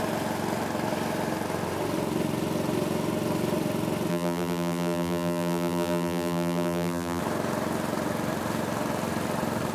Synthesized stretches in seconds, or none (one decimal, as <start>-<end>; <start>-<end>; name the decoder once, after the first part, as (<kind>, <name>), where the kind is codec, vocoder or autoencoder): 4.1-7.2 (vocoder, BigVGAN v2)